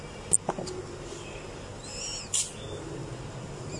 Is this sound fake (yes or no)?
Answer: no